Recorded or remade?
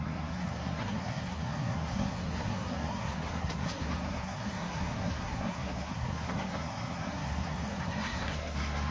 remade